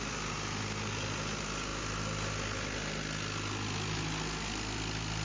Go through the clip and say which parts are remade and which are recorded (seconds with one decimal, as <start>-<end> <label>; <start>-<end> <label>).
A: 0.0-5.2 recorded